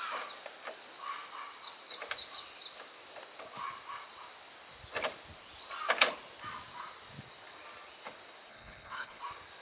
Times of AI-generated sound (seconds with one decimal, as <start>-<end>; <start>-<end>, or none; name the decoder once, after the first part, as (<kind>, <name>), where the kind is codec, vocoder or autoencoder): 8.5-9.2 (codec, HILCodec)